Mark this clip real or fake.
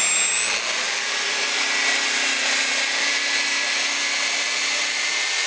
real